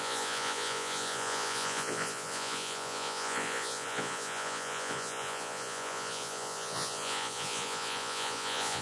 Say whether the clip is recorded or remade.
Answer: remade